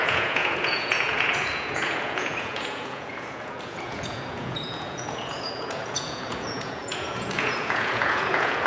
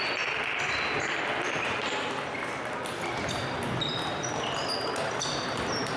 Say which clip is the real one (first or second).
second